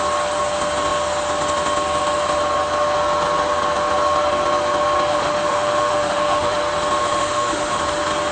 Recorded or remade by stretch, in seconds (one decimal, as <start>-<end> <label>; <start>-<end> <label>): 0.0-5.1 recorded; 5.1-6.6 remade; 6.6-7.0 recorded; 7.0-7.8 remade; 7.8-8.3 recorded